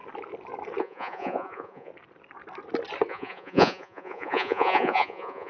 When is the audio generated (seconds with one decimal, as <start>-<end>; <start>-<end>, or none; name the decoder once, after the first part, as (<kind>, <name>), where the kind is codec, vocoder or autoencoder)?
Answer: 0.8-1.9 (vocoder, Vocos); 3.1-5.5

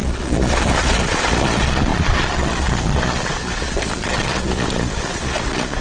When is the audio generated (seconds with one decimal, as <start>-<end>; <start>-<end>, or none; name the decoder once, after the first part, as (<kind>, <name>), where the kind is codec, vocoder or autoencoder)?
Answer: 0.0-5.8 (vocoder, Vocos)

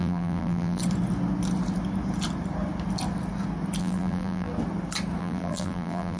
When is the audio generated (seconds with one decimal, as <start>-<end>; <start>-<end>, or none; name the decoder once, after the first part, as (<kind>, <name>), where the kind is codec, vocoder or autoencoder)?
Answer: 0.0-0.8 (vocoder, BigVGAN v2); 3.8-4.5; 5.2-6.2